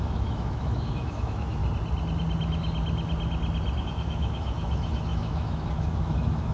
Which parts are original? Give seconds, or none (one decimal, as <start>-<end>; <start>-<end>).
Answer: 1.6-3.8